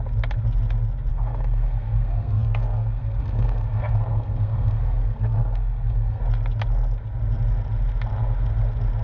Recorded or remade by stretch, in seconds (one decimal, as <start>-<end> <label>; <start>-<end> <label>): 0.0-1.1 recorded; 1.1-6.2 remade; 6.2-9.0 recorded